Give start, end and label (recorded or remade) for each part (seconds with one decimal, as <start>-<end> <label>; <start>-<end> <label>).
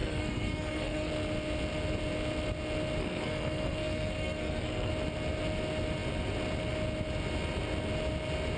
0.0-1.1 remade; 1.1-3.0 recorded; 3.0-4.9 remade; 4.9-8.6 recorded